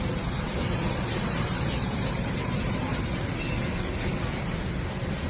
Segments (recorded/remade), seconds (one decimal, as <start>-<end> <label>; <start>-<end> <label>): 0.0-0.6 recorded; 0.6-2.7 remade; 2.7-5.3 recorded